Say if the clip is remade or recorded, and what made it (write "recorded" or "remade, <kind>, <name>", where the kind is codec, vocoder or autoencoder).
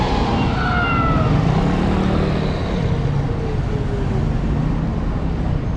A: recorded